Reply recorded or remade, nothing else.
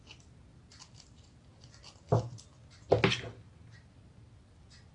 recorded